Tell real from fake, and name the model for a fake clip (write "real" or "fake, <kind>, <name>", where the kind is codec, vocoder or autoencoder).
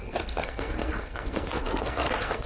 fake, codec, SNAC